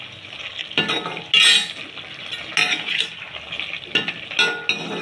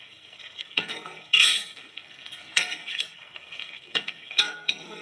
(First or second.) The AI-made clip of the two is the second